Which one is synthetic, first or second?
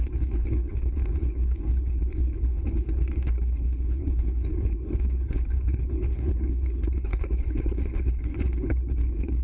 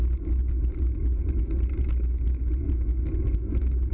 first